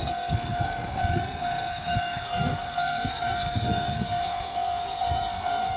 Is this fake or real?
fake